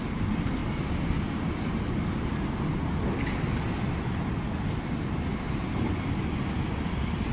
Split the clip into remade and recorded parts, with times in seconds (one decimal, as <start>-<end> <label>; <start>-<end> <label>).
0.0-7.3 recorded